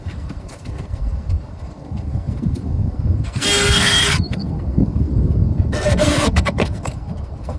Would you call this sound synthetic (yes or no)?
yes